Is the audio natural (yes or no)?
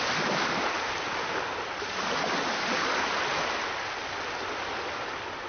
yes